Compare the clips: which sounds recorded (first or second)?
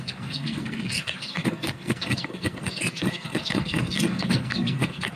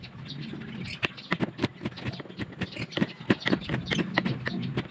second